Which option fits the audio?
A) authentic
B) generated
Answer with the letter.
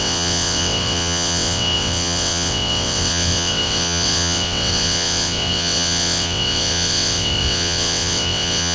B